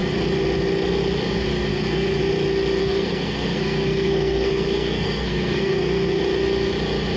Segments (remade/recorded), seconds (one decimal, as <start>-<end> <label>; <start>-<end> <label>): 0.0-1.7 recorded; 1.7-2.2 remade; 2.2-2.8 recorded; 2.8-6.2 remade; 6.2-7.2 recorded

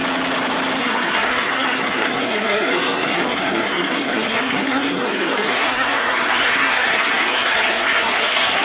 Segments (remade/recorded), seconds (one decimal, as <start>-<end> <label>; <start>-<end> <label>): 0.0-0.8 recorded; 0.8-8.6 remade